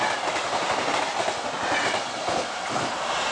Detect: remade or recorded remade